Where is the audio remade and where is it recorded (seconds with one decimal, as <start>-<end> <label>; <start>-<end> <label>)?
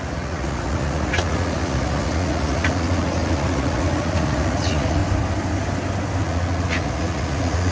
0.0-5.0 remade; 5.0-6.2 recorded; 6.2-7.7 remade